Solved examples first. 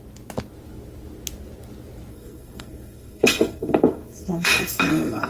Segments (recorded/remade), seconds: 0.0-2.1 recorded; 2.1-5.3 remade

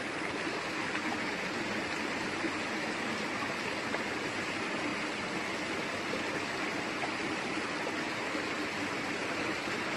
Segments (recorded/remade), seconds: 0.0-10.0 recorded

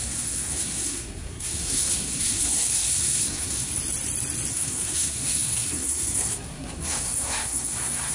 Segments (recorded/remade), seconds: 0.0-3.7 remade; 3.7-4.5 recorded; 4.5-8.1 remade

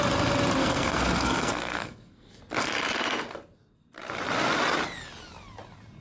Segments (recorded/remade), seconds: 0.0-0.6 recorded; 0.6-2.4 remade; 2.4-6.0 recorded

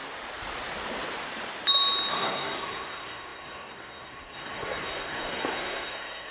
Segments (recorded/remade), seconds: 0.0-2.1 recorded; 2.1-6.3 remade

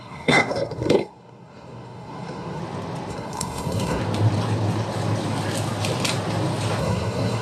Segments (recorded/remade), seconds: 0.0-2.6 remade; 2.6-3.1 recorded; 3.1-4.0 remade; 4.0-6.8 recorded; 6.8-7.4 remade

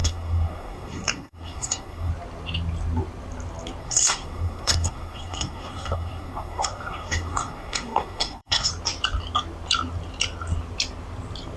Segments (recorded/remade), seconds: 0.0-2.1 remade; 2.1-3.8 recorded; 3.8-8.7 remade; 8.7-11.6 recorded

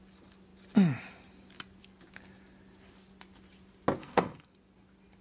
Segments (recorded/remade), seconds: 0.0-4.0 recorded; 4.0-4.5 remade; 4.5-5.2 recorded